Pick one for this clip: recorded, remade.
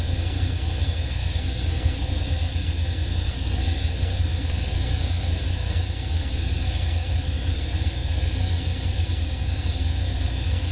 remade